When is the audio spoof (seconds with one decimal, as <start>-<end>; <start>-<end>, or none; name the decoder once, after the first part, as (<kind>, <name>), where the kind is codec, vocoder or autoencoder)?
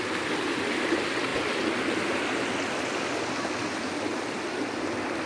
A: none